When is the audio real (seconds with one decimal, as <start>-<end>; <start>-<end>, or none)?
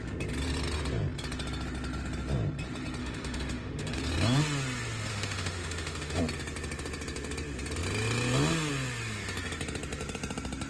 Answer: 0.0-3.0; 4.0-5.1; 6.2-10.7